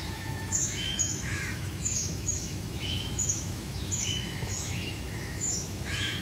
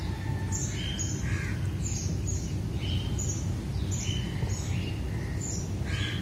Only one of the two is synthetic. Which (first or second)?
first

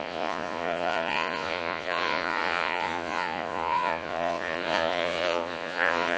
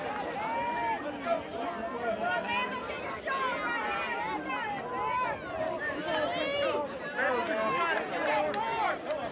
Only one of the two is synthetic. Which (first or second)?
first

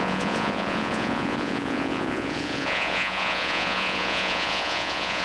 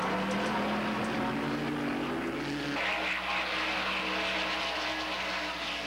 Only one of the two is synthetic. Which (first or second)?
first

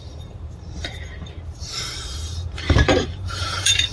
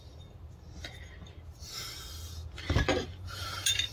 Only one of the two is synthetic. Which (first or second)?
first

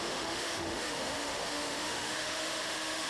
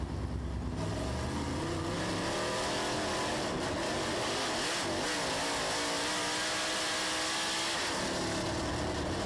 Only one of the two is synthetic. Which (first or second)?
first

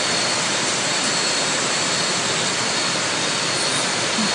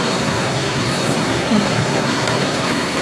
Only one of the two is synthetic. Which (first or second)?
second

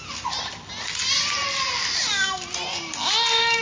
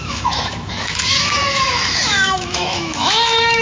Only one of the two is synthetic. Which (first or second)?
second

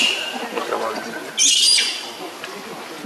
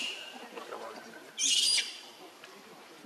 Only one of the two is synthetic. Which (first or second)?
second